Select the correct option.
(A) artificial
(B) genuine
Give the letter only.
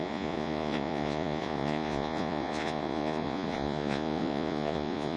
A